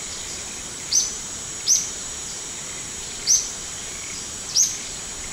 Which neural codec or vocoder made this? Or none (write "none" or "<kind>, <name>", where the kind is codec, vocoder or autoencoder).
vocoder, BigVGAN v2